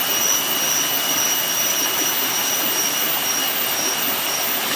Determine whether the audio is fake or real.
real